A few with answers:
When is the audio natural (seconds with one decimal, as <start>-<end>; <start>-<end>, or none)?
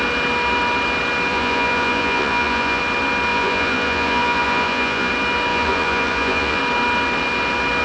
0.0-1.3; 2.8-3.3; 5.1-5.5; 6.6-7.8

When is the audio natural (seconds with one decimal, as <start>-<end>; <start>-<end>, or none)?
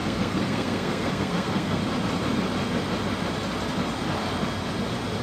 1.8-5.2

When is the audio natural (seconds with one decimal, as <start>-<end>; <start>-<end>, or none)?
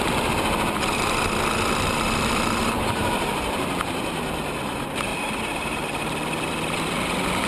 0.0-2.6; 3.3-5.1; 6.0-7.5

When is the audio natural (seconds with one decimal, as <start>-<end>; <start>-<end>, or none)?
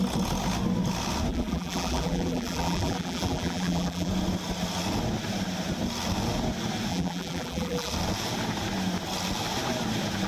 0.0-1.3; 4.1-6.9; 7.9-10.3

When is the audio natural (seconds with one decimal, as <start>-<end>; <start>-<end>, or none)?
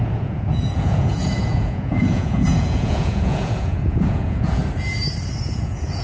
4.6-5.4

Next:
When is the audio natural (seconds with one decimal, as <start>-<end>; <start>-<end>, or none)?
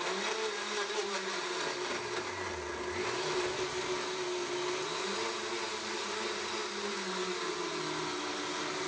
0.0-8.9